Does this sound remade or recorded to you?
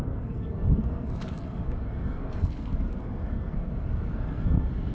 remade